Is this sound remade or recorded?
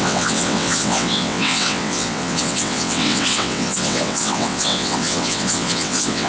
remade